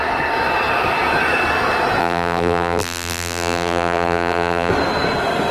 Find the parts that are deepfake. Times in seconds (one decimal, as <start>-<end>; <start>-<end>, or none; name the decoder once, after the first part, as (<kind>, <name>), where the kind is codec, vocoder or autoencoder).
2.0-4.7 (vocoder, BigVGAN v2)